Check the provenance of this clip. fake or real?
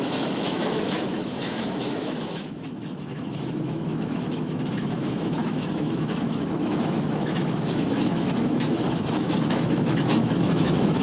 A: fake